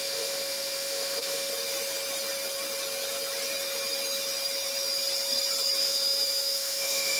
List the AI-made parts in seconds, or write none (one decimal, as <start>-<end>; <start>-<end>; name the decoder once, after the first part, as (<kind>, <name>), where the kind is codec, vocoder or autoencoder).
0.0-1.5 (autoencoder, DAC-VAE); 5.8-7.2